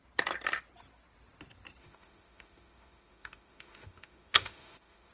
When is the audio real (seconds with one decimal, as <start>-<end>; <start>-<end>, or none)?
0.0-1.8

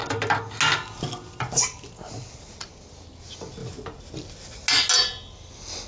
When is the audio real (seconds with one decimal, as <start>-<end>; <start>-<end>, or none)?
0.0-5.9